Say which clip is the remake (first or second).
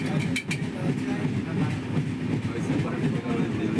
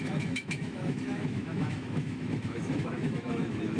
second